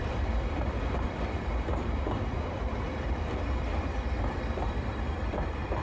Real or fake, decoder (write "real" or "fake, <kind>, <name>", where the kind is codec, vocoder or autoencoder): fake, vocoder, BigVGAN v2